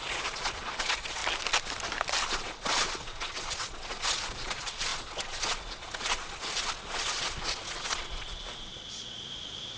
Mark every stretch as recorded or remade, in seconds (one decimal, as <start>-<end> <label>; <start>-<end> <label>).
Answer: 0.0-1.2 remade; 1.2-2.3 recorded; 2.3-9.8 remade